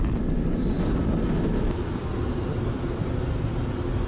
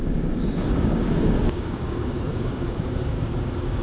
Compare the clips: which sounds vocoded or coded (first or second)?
second